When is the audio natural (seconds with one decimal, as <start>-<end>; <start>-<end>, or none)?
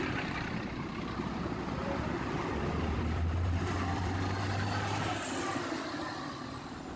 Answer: 0.0-1.8; 4.4-7.0